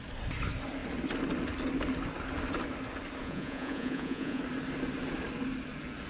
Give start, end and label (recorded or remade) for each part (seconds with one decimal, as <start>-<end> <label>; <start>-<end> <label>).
0.0-3.2 recorded; 3.2-4.4 remade; 4.4-6.1 recorded